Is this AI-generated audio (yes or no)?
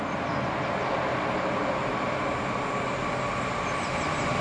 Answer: no